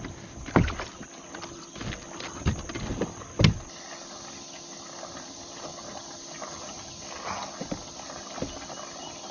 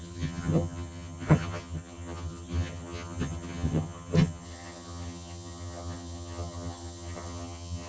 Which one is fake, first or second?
second